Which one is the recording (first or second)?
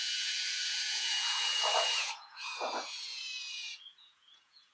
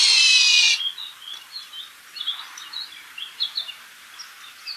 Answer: second